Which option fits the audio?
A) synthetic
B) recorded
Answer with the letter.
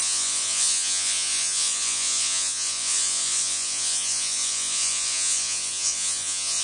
A